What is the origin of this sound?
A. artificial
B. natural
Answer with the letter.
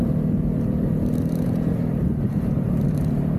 A